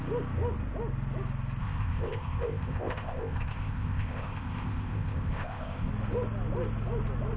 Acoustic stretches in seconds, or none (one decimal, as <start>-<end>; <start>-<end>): 0.0-1.6; 5.9-7.4